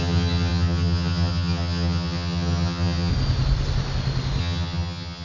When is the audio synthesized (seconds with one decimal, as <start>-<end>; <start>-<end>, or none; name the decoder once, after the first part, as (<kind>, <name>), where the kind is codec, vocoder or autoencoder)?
0.0-3.1 (vocoder, HiFi-GAN); 4.4-5.2